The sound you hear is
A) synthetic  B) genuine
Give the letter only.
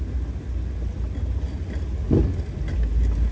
B